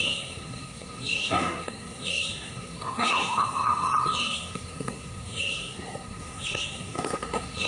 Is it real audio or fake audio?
fake